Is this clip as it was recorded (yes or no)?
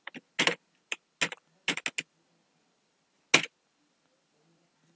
yes